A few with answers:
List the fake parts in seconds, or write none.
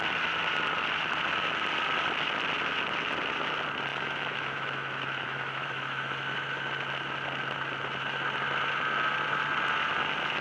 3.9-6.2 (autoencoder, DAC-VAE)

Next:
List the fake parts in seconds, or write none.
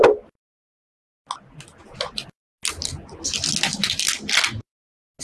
none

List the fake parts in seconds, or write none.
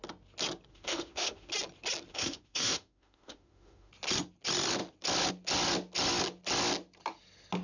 0.7-1.5 (autoencoder, DAC-VAE); 2.1-3.9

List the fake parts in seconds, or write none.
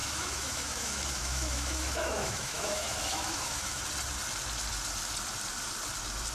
0.0-3.8 (autoencoder, DAC-VAE)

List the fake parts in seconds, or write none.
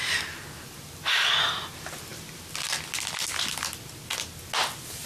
none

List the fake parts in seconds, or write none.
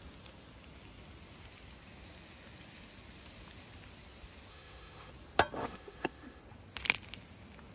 4.5-5.1 (autoencoder, DAC-VAE); 5.6-6.4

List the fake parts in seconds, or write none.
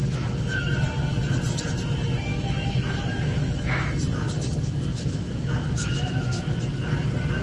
0.0-0.7 (autoencoder, DAC-VAE); 2.3-3.9; 4.9-6.6